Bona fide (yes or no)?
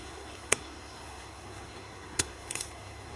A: no